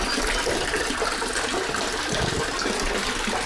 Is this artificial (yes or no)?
no